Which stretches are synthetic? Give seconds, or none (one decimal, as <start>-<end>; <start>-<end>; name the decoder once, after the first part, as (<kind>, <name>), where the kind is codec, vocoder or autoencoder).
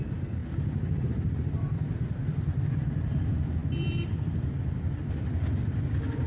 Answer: 0.4-2.2 (vocoder, BigVGAN v2)